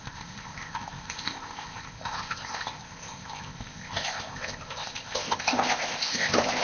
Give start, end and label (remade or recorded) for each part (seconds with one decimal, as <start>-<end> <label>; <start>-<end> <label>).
0.0-6.6 remade